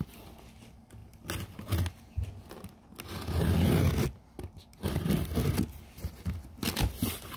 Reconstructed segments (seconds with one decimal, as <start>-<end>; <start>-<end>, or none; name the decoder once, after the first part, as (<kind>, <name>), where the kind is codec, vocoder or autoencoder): none